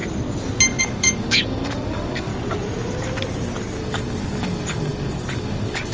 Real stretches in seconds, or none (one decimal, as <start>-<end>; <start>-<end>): 0.0-0.8; 2.3-3.8